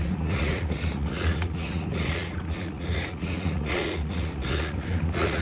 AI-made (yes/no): yes